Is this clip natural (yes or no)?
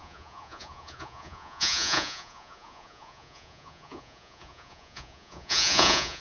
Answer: no